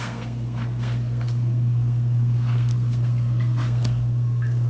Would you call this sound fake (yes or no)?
yes